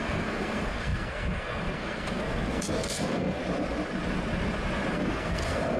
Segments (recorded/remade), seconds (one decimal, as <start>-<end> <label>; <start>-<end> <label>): 0.0-3.4 remade; 3.4-4.9 recorded; 4.9-5.8 remade